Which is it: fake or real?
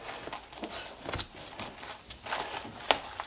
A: real